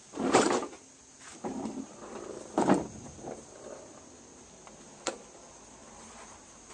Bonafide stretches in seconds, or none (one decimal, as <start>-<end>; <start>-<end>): 4.0-5.8